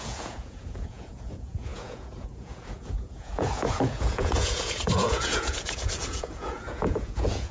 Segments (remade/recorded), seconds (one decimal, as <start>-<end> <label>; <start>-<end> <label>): 0.0-7.5 remade

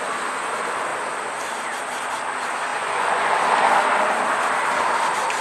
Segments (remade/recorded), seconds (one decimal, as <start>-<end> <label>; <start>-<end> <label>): 0.0-2.7 recorded; 2.7-3.4 remade; 3.4-5.4 recorded